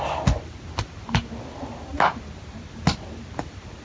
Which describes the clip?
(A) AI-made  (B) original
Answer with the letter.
B